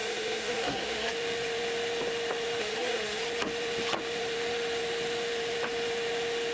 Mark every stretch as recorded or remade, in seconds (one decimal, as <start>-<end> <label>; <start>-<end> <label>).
0.0-1.1 remade; 1.1-2.6 recorded; 2.6-3.2 remade; 3.2-6.5 recorded